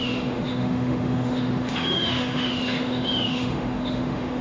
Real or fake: fake